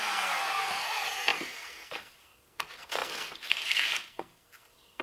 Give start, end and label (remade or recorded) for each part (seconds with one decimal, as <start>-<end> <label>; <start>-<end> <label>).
0.0-5.0 remade